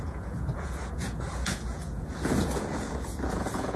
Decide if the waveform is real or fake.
fake